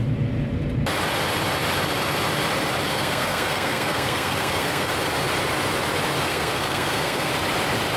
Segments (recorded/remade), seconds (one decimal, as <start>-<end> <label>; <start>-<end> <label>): 0.0-2.9 recorded; 2.9-4.9 remade; 4.9-6.3 recorded; 6.3-7.3 remade; 7.3-8.0 recorded